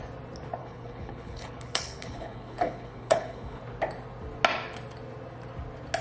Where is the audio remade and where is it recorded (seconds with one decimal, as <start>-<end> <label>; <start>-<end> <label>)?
0.0-0.6 recorded; 0.6-3.6 remade; 3.6-6.0 recorded